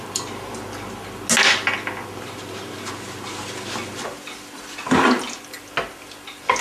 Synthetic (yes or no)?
no